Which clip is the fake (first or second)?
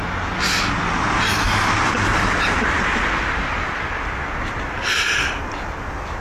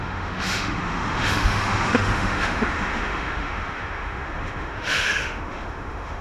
second